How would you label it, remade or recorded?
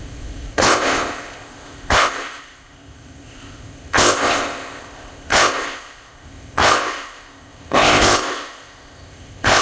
remade